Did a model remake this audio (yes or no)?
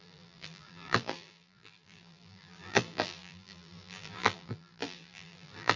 yes